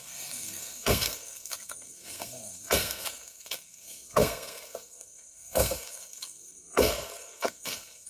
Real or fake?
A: fake